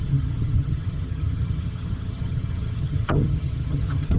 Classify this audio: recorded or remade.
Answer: remade